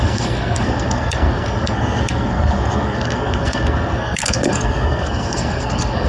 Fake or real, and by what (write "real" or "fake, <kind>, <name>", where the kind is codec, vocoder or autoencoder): fake, codec, SNAC